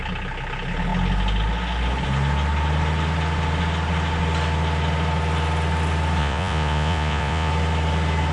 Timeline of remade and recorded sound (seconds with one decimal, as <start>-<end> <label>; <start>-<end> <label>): 0.0-6.2 recorded; 6.2-7.5 remade; 7.5-8.3 recorded